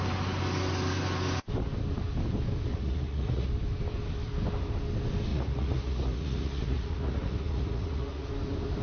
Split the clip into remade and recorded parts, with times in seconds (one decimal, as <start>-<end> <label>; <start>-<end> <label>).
0.0-2.7 recorded; 2.7-3.5 remade; 3.5-5.3 recorded; 5.3-8.3 remade; 8.3-8.8 recorded